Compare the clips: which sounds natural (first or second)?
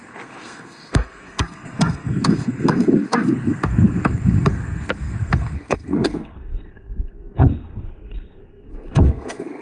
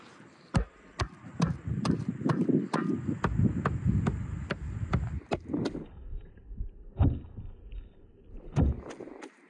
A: second